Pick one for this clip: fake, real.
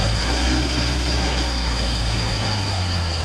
fake